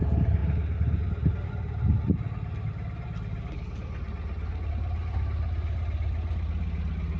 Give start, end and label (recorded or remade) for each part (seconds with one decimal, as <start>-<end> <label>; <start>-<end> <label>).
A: 0.0-7.2 recorded